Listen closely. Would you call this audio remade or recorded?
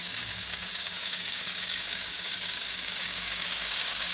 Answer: remade